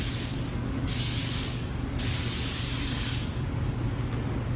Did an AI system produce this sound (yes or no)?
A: yes